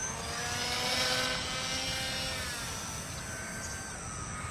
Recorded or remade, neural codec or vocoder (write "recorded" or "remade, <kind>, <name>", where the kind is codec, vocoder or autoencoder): recorded